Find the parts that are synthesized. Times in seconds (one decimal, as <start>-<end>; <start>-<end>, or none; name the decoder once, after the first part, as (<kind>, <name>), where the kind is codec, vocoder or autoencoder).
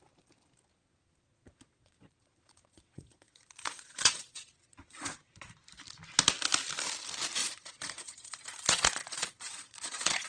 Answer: 0.7-5.5 (vocoder, Vocos); 7.4-10.3